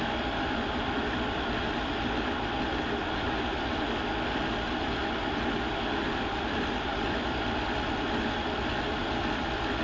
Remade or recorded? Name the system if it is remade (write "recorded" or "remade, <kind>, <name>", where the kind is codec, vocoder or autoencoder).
recorded